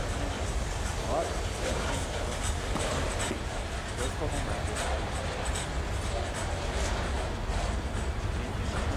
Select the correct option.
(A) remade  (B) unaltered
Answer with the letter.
B